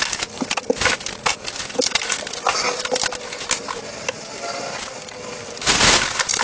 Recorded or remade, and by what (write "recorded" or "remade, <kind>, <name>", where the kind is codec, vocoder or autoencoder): recorded